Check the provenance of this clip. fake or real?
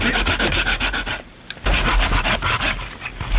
real